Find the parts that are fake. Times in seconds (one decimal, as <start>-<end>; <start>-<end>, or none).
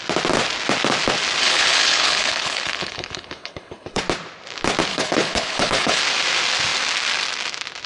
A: 1.4-4.0; 4.9-6.0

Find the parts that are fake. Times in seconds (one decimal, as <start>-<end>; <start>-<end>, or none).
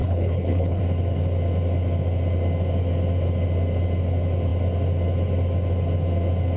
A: 0.0-0.8